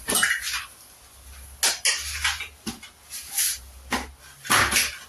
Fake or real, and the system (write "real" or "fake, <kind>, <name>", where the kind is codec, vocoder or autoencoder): real